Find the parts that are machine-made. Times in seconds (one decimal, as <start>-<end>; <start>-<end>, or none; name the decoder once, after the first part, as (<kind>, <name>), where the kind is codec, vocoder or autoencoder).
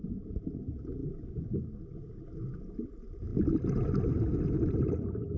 none